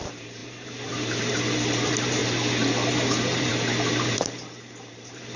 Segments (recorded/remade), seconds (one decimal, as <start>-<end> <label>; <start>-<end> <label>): 0.0-2.2 remade; 2.2-2.9 recorded; 2.9-3.5 remade; 3.5-4.1 recorded; 4.1-5.4 remade